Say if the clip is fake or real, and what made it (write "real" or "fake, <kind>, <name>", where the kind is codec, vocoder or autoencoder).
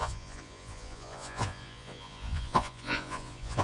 fake, vocoder, Vocos